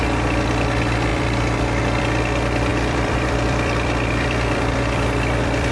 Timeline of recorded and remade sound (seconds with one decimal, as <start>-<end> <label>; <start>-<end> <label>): 0.0-1.1 recorded; 1.1-2.0 remade; 2.0-2.7 recorded; 2.7-5.7 remade